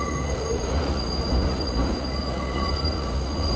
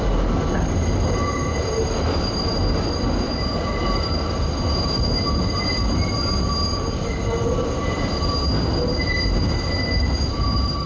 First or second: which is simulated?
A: first